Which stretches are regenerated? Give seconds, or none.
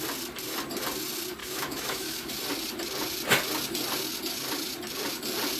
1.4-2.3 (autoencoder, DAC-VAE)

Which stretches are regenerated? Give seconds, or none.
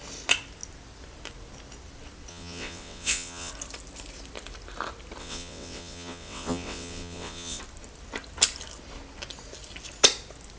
2.3-3.5 (vocoder, WaveNeXt); 5.2-7.6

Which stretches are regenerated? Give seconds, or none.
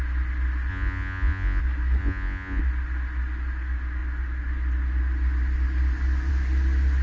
0.7-1.6 (vocoder, Vocos); 2.0-2.6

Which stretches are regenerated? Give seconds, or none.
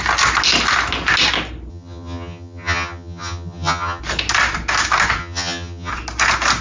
1.7-4.0 (vocoder, HiFi-GAN); 5.2-5.9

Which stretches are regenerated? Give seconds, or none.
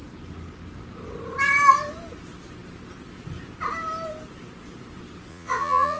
5.3-6.0 (vocoder, Vocos)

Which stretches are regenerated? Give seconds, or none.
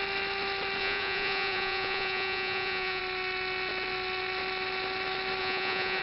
0.8-3.0 (vocoder, Vocos); 5.4-6.0